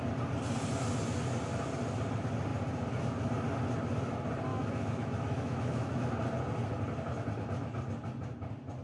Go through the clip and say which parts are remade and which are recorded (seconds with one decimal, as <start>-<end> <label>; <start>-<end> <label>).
0.0-4.5 recorded; 4.5-6.1 remade; 6.1-8.8 recorded